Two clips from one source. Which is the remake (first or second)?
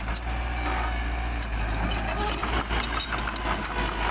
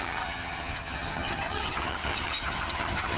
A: second